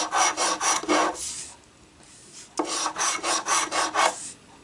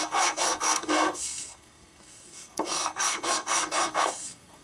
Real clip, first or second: first